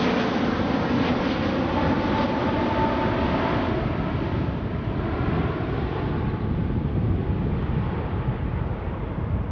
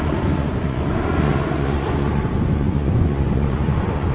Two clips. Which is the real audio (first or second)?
first